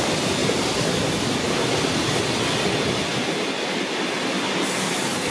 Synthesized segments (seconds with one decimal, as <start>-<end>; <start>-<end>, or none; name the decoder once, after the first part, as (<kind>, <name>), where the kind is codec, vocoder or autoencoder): none